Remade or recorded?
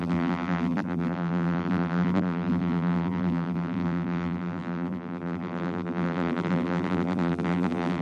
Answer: remade